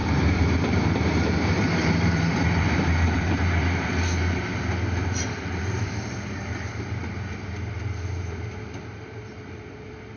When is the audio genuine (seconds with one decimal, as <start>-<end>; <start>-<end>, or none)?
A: none